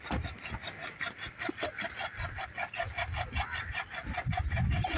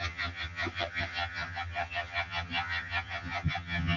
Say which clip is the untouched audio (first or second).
first